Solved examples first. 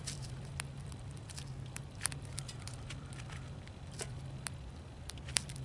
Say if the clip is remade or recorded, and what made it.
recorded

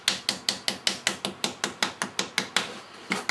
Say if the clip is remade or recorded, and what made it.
recorded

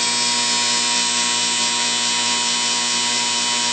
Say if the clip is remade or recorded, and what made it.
recorded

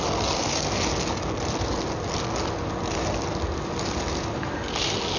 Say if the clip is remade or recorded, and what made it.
recorded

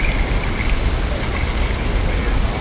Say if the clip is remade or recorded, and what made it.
recorded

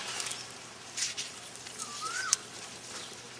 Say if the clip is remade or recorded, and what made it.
remade, vocoder, BigVGAN v2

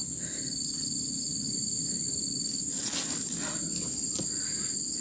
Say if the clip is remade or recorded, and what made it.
recorded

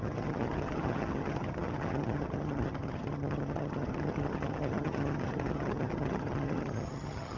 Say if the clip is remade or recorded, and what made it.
remade, vocoder, HiFi-GAN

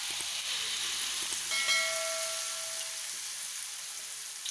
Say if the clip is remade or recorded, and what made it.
recorded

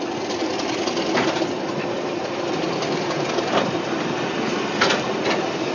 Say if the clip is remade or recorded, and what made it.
remade, vocoder, BigVGAN v2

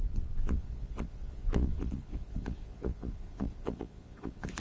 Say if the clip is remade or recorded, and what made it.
remade, vocoder, Vocos